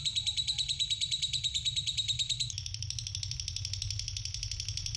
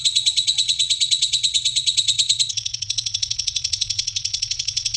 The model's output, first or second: second